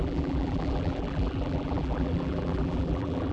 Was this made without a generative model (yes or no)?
no